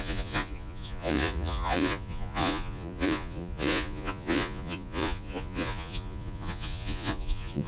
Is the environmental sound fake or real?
fake